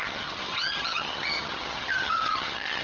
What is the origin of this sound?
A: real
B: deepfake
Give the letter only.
B